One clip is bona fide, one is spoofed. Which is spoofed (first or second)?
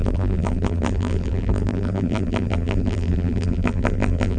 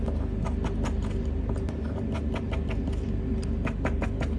first